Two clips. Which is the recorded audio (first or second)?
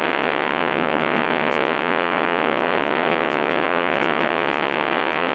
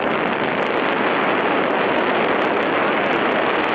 second